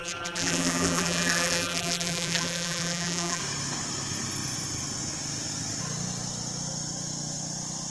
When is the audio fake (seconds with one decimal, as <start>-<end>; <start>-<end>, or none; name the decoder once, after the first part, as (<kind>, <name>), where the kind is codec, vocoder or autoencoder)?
0.0-3.4 (vocoder, BigVGAN v2)